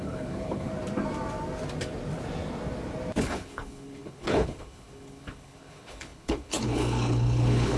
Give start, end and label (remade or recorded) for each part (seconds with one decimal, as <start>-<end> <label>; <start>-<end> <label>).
0.0-0.7 remade; 0.7-3.2 recorded; 3.2-7.8 remade